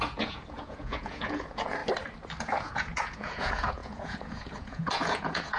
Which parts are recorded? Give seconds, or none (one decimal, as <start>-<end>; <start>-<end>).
1.8-2.4